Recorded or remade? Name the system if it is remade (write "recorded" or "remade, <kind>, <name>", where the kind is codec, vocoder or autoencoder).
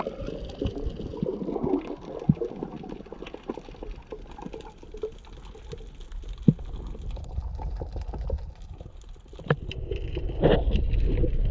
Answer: recorded